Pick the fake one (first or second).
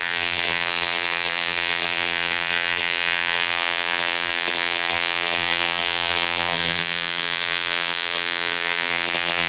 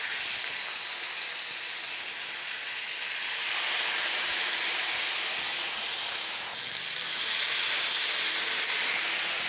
first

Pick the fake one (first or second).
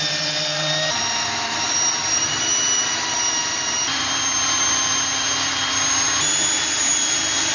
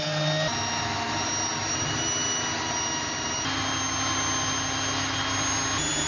first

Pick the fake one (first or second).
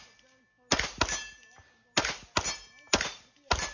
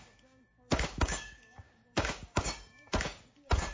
second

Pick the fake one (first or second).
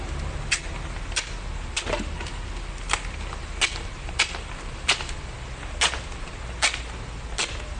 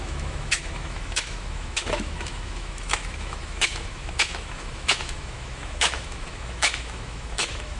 second